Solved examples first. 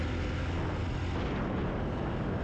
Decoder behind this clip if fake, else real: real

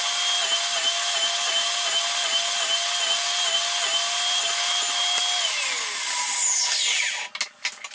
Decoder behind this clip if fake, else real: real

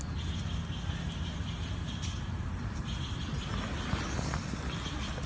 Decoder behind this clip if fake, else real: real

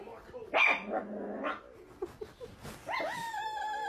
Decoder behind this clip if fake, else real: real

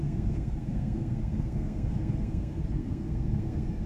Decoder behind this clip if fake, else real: fake, codec, SNAC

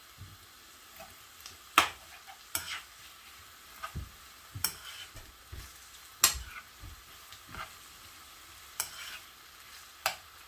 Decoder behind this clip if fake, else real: real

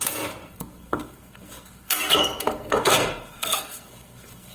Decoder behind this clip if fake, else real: fake, codec, SNAC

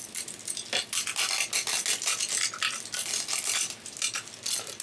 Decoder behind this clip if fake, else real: real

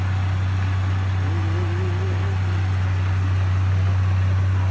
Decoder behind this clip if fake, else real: real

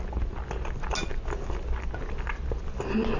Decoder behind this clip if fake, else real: real